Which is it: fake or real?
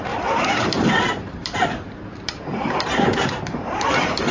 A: fake